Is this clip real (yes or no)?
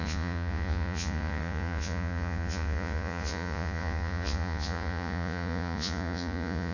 no